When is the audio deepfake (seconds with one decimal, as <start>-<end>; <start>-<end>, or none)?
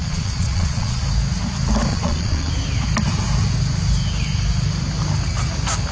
0.0-1.0; 1.9-2.5